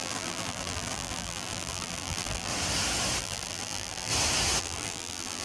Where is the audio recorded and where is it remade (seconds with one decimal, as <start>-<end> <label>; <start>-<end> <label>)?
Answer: 0.0-2.5 remade; 2.5-3.2 recorded; 3.2-4.1 remade; 4.1-4.6 recorded; 4.6-5.4 remade